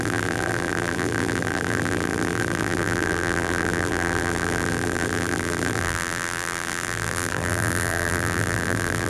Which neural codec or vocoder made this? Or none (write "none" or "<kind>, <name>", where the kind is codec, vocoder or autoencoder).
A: vocoder, BigVGAN v2